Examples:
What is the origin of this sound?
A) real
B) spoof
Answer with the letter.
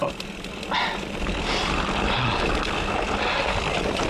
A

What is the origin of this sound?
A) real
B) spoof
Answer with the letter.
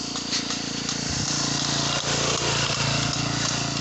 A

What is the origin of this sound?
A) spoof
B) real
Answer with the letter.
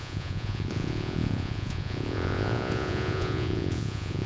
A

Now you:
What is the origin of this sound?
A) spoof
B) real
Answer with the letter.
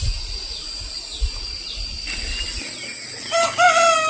B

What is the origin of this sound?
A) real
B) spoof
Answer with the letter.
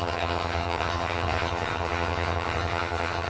B